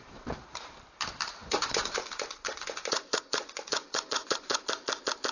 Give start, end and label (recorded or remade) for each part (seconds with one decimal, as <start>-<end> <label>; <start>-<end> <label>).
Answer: 0.0-1.4 recorded; 1.4-4.6 remade; 4.6-5.3 recorded